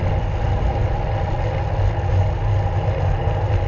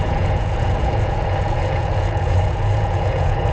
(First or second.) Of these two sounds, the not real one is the second